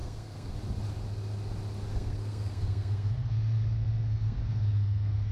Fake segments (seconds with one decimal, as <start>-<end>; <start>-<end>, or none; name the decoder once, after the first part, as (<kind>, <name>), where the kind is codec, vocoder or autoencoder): 0.0-0.5 (codec, SNAC); 1.9-5.3